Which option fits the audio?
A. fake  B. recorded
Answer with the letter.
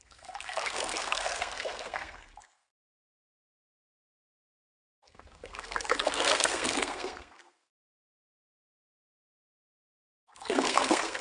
A